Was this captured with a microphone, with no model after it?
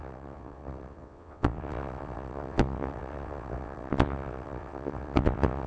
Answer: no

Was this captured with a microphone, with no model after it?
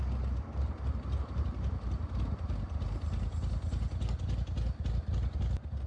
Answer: yes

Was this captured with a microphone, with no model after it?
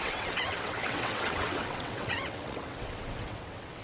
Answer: no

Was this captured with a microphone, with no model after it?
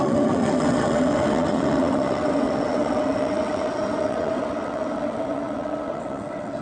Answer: no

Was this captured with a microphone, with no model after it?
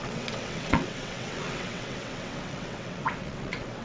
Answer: no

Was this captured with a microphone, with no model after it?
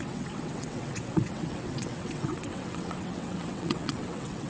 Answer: no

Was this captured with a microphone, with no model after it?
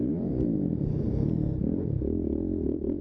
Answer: yes